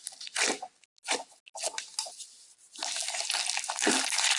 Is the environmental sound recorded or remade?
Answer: recorded